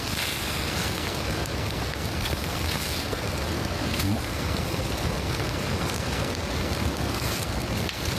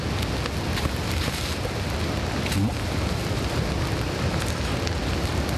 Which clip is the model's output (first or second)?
first